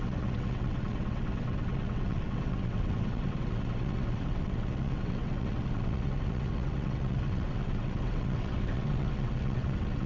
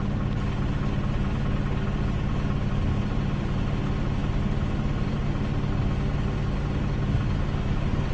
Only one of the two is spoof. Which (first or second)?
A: first